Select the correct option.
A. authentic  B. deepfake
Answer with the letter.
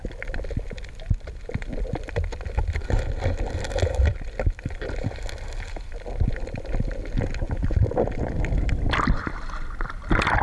A